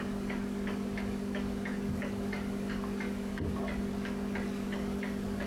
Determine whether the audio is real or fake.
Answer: fake